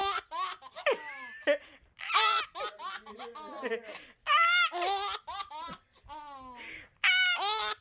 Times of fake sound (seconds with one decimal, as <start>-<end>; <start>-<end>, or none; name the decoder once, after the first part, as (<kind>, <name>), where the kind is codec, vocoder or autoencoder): none